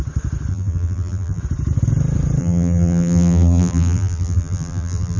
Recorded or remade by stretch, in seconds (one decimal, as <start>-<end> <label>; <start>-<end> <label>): 0.0-0.5 recorded; 0.5-1.4 remade; 1.4-2.4 recorded; 2.4-5.2 remade